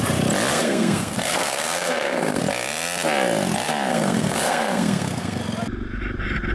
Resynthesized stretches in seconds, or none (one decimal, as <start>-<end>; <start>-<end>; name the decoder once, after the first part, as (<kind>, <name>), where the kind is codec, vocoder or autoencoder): 0.5-2.4 (codec, SNAC); 3.9-5.4